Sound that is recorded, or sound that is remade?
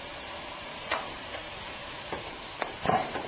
remade